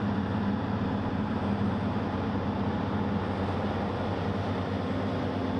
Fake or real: real